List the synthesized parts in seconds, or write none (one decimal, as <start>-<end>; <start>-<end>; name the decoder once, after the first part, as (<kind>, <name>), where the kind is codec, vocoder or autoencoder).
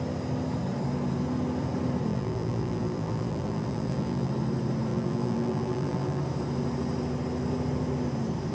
2.1-4.3 (vocoder, BigVGAN v2); 4.9-6.2